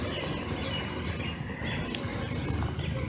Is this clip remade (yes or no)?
no